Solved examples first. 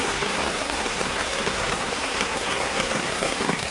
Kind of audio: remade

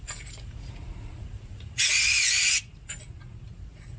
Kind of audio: remade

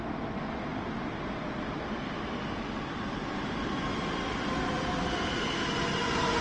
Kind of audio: recorded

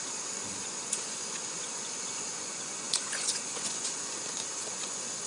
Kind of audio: remade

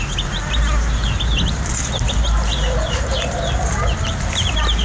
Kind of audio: recorded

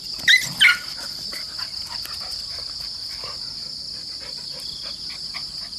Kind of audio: recorded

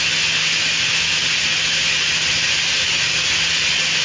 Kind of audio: recorded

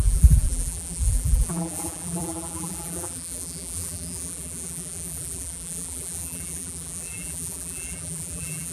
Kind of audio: remade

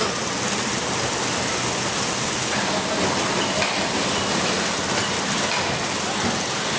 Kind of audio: recorded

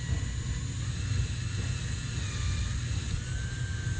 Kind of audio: recorded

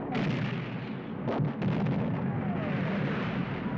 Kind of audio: recorded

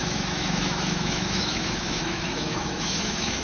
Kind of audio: remade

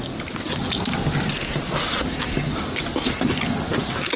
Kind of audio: recorded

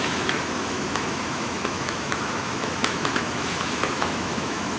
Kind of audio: remade